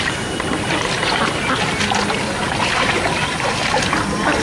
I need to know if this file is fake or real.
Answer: real